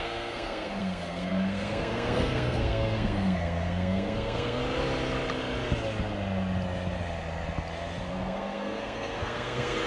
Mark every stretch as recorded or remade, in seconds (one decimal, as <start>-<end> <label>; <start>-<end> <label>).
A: 0.0-4.6 remade; 4.6-8.1 recorded; 8.1-9.9 remade